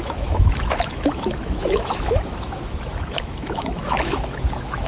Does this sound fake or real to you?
fake